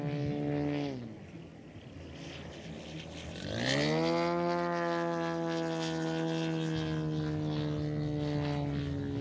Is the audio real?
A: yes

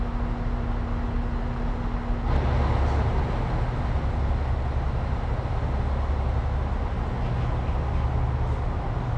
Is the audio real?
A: yes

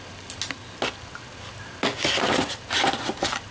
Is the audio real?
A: yes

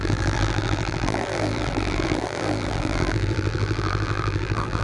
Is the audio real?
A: no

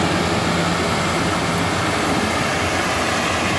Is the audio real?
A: yes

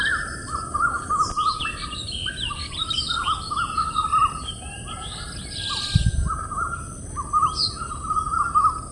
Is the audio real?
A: yes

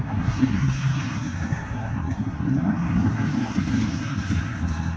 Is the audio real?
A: no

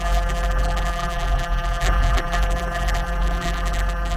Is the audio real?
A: no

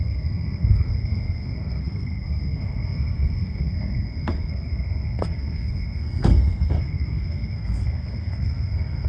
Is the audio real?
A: no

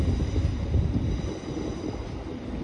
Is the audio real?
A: yes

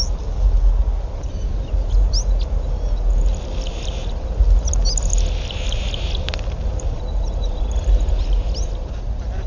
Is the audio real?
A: yes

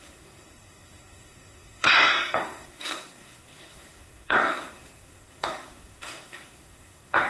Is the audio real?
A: no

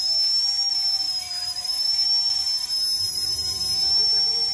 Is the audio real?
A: yes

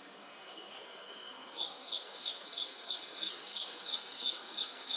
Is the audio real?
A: no